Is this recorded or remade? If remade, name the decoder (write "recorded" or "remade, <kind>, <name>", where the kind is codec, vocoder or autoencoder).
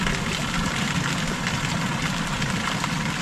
recorded